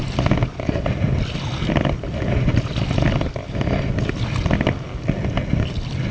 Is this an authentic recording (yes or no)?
yes